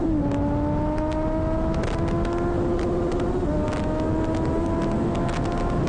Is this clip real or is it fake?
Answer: real